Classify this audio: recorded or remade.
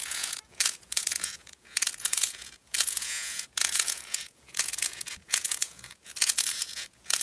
remade